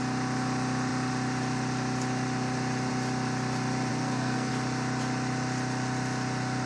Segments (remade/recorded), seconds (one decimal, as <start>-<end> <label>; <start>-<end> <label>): 0.0-3.9 recorded; 3.9-4.5 remade; 4.5-6.7 recorded